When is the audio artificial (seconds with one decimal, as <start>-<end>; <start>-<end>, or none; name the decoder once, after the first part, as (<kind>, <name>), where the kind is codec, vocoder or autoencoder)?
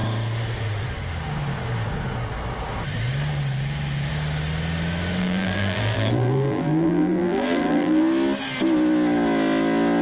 5.2-8.0 (vocoder, BigVGAN v2)